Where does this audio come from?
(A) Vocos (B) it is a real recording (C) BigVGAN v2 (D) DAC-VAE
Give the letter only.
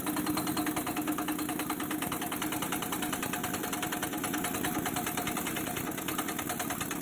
B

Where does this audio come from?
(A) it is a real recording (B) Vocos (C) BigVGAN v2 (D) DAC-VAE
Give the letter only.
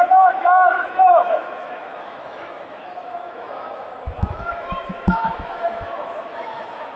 D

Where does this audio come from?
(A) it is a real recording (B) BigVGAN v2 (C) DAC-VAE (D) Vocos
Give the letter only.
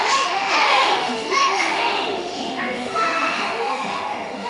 C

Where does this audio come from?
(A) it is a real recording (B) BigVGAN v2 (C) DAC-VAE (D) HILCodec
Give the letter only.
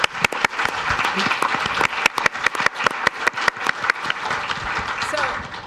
A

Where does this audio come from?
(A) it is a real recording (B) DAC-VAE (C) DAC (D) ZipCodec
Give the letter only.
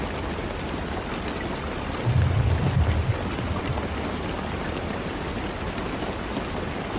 A